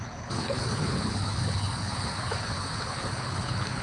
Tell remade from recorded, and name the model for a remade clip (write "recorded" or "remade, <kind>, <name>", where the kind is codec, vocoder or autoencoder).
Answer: remade, codec, HILCodec